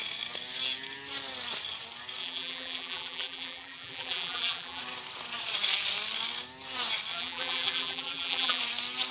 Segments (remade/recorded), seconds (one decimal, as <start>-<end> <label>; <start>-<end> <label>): 0.0-2.2 recorded; 2.2-4.8 remade; 4.8-7.1 recorded; 7.1-8.6 remade; 8.6-9.1 recorded